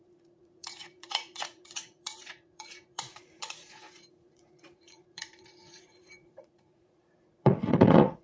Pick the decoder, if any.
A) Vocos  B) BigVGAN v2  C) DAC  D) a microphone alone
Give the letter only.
A